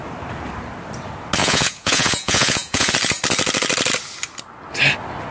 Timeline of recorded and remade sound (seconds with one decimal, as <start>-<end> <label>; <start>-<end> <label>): 0.0-1.4 recorded; 1.4-2.9 remade; 2.9-5.3 recorded